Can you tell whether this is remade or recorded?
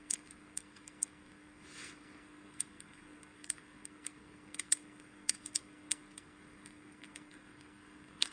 remade